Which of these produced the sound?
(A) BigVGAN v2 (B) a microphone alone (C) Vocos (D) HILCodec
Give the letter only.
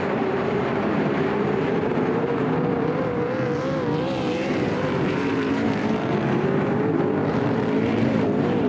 A